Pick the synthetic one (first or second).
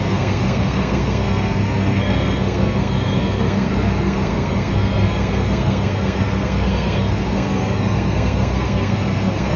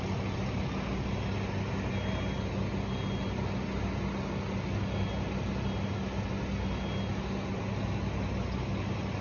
first